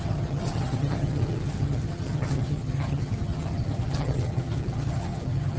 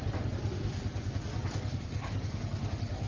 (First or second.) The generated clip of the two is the first